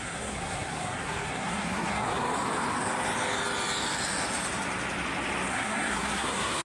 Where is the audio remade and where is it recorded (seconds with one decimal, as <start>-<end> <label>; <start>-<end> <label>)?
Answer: 0.0-2.3 remade; 2.3-5.5 recorded; 5.5-6.6 remade